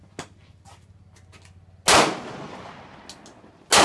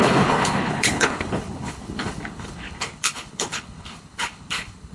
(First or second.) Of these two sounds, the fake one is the second